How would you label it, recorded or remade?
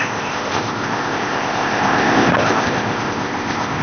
remade